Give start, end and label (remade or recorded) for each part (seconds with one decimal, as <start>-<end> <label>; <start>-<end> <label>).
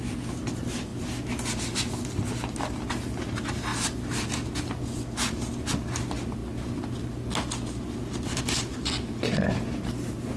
0.0-10.4 recorded